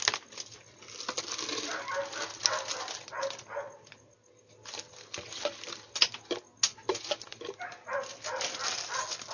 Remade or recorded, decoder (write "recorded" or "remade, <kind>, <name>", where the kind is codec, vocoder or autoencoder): recorded